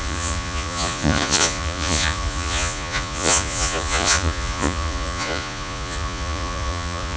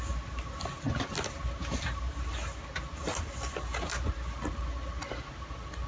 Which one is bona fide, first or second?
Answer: second